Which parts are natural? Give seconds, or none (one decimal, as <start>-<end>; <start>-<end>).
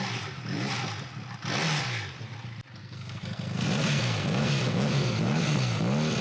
0.0-2.8; 5.8-6.2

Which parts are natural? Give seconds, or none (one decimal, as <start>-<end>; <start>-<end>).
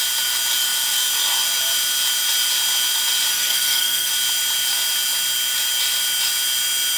0.0-3.3; 4.1-7.0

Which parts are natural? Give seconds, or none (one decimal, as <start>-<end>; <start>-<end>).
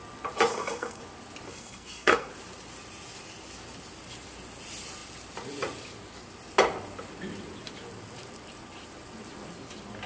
0.0-0.5; 1.0-1.5; 2.3-10.1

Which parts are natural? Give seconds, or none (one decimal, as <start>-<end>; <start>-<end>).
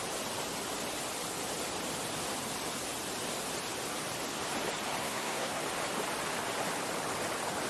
0.0-5.0; 5.6-7.7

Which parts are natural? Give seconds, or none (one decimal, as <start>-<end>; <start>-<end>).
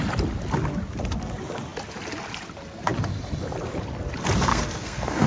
0.0-4.5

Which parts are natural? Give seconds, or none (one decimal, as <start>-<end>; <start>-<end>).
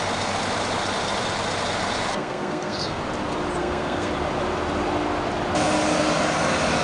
0.0-2.1; 3.0-3.6; 4.1-6.8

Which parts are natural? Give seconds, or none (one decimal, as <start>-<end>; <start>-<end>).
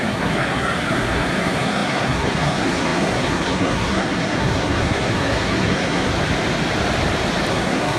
6.1-7.5